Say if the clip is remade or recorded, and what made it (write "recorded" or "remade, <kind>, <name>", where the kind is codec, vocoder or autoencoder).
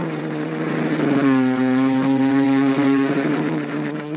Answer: remade, vocoder, WaveNeXt